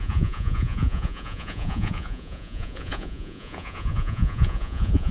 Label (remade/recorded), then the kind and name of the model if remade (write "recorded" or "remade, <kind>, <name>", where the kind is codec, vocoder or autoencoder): remade, vocoder, Vocos